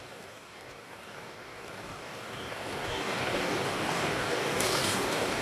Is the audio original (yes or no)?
no